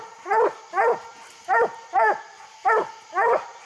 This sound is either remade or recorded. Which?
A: recorded